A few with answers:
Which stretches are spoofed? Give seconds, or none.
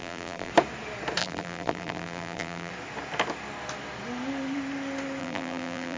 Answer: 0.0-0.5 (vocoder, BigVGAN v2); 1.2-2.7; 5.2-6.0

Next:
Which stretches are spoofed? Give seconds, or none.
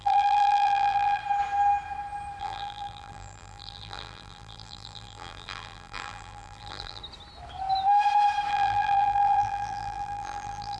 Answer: 0.0-1.2 (vocoder, BigVGAN v2); 2.4-7.0; 8.5-10.8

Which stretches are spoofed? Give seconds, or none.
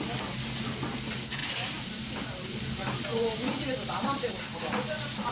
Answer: 1.4-2.5 (vocoder, BigVGAN v2); 3.1-4.6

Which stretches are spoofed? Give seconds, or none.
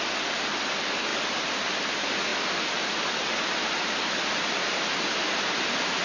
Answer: 2.3-4.7 (vocoder, BigVGAN v2)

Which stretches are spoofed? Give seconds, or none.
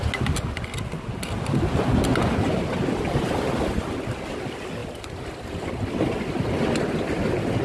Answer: 4.8-5.7 (vocoder, BigVGAN v2)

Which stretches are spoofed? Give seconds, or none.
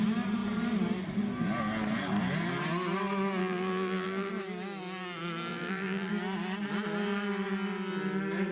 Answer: 3.4-4.3 (vocoder, BigVGAN v2); 5.5-6.1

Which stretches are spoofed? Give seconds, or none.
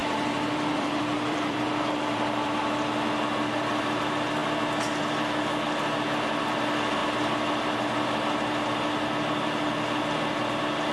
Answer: 0.0-2.6 (vocoder, BigVGAN v2)